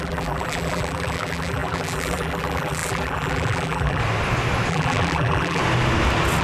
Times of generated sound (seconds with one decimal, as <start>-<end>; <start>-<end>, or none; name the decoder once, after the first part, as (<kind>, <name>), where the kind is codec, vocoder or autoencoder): 0.0-4.0 (vocoder, BigVGAN v2); 4.7-5.6